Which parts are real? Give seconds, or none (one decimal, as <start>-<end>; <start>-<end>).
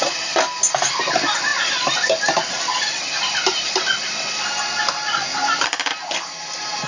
0.0-6.9